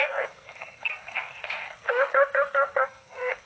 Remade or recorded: remade